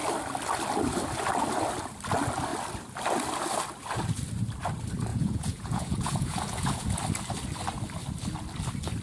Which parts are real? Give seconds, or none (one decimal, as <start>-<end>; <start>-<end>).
0.0-5.1; 7.0-9.0